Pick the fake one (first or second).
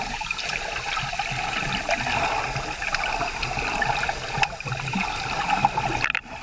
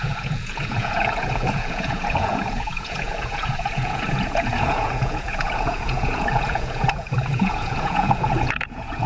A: second